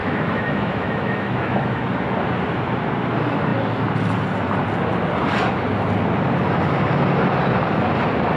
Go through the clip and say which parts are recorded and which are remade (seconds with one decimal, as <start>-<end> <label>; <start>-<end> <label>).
0.0-1.8 remade; 1.8-8.4 recorded